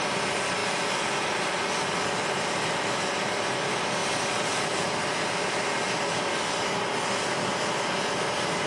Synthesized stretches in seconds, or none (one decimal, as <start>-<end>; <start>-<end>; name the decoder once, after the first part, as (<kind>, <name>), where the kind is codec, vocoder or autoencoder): none

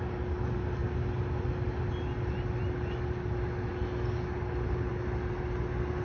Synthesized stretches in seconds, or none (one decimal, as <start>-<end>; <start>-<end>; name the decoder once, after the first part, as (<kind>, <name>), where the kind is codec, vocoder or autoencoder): none

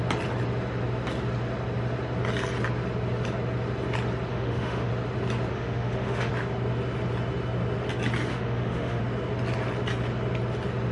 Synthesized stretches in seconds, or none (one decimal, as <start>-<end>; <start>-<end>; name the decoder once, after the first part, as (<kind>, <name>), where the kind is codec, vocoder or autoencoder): 4.3-4.9 (autoencoder, DAC-VAE); 5.5-6.3; 8.3-9.0

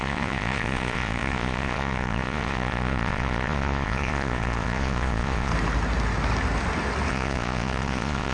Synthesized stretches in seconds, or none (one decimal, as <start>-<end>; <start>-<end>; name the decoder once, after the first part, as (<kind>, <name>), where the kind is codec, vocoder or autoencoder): 0.0-5.5 (vocoder, Vocos); 7.1-8.3